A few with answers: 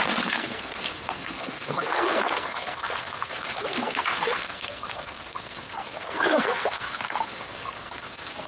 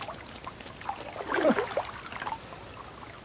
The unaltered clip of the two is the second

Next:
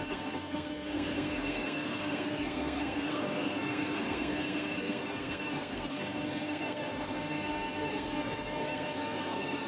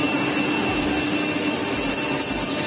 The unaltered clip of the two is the second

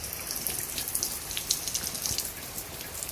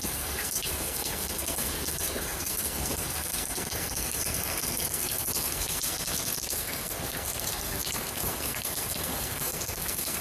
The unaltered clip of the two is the first